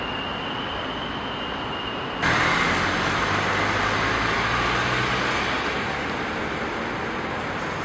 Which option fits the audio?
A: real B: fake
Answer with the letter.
A